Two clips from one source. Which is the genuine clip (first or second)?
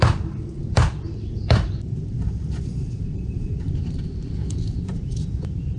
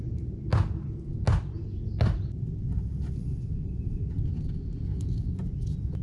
second